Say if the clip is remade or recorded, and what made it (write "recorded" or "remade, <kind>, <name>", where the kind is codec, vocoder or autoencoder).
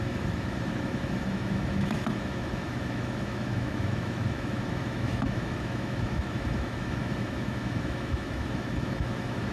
remade, autoencoder, DAC-VAE